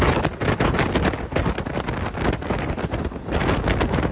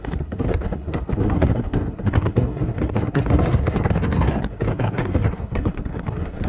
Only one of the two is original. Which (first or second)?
first